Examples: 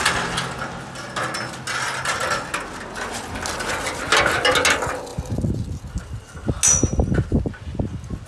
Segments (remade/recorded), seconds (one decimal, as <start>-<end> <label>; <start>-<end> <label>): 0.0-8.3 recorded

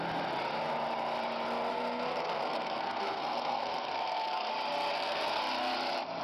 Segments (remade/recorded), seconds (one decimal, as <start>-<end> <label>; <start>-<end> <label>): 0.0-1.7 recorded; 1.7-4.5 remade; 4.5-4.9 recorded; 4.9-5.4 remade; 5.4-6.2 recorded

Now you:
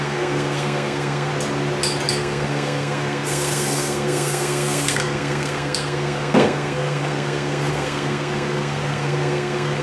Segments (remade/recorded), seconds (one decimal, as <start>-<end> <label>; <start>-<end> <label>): 0.0-1.3 remade; 1.3-2.1 recorded; 2.1-9.8 remade